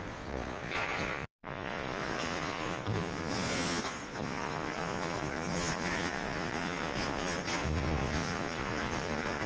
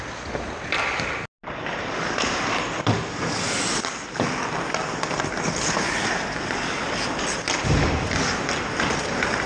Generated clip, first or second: first